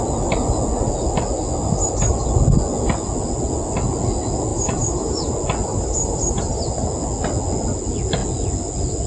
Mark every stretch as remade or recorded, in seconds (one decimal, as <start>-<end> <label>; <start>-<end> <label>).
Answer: 0.0-4.5 recorded; 4.5-5.3 remade; 5.3-5.7 recorded; 5.7-6.6 remade; 6.6-9.1 recorded